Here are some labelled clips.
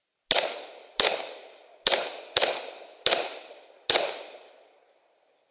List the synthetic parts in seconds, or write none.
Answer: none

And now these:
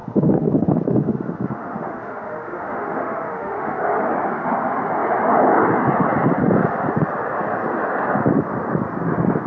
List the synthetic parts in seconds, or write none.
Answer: 0.0-3.8 (autoencoder, DAC-VAE)

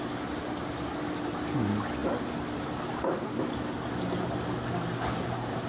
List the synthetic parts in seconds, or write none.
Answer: none

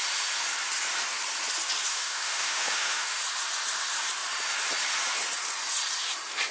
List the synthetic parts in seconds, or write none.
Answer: 1.9-3.2 (autoencoder, DAC-VAE)

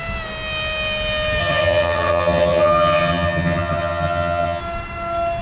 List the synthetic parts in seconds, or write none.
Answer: 1.4-4.6 (vocoder, HiFi-GAN)

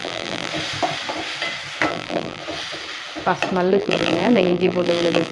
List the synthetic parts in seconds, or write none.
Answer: 0.0-0.5 (vocoder, BigVGAN v2); 1.9-2.4; 3.7-5.3